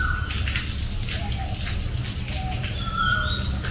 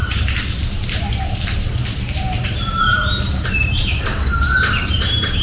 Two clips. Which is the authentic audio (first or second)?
first